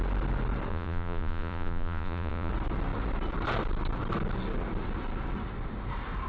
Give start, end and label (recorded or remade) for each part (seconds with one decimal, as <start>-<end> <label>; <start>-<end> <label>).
0.0-0.7 recorded; 0.7-2.5 remade; 2.5-6.3 recorded